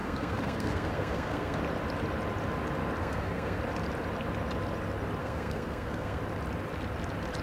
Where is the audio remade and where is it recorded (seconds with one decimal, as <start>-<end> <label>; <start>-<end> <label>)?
0.0-1.6 remade; 1.6-3.0 recorded; 3.0-3.6 remade; 3.6-5.2 recorded; 5.2-6.2 remade; 6.2-7.4 recorded